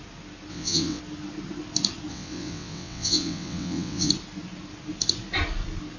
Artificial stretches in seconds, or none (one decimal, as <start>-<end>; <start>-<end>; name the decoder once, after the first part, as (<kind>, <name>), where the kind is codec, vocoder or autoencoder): 0.5-1.0 (vocoder, WaveNeXt); 2.1-4.1